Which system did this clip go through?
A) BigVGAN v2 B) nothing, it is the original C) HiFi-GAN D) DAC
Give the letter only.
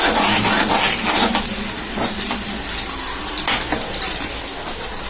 B